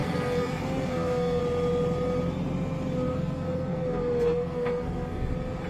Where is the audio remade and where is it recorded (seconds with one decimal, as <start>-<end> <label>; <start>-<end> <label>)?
0.0-1.4 remade; 1.4-3.1 recorded; 3.1-5.3 remade; 5.3-5.7 recorded